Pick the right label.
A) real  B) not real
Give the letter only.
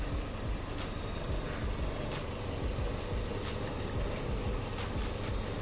A